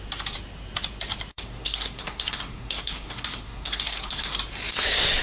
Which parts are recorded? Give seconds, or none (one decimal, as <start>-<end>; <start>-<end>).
0.0-1.3; 4.4-5.2